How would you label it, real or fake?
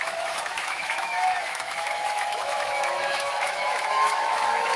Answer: fake